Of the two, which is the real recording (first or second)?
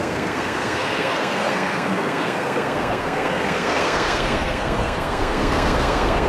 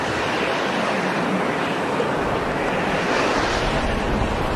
second